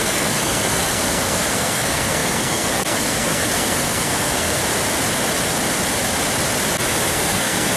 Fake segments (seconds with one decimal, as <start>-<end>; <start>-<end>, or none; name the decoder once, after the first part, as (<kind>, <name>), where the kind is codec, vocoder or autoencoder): 0.0-4.6 (codec, SNAC); 7.1-7.8